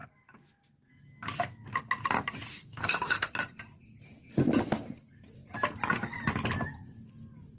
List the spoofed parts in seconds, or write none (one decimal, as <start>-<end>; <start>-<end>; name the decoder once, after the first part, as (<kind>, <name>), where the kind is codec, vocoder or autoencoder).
2.5-3.3 (autoencoder, DAC-VAE)